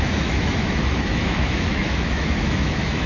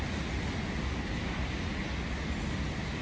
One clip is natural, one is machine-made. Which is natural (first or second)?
second